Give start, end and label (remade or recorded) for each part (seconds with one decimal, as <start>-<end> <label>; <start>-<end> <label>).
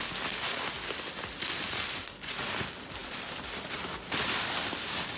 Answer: 0.0-5.2 recorded